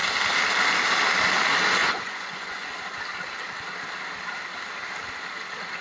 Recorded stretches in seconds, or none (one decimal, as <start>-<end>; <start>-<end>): 0.0-1.8; 2.7-5.8